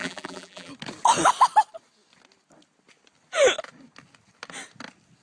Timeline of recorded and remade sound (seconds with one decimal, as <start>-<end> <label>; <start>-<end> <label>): 0.0-0.7 remade; 0.7-5.2 recorded